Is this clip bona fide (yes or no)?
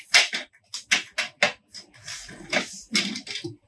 yes